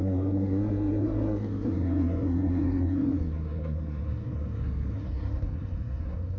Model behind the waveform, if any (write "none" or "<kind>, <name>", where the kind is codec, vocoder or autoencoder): codec, SNAC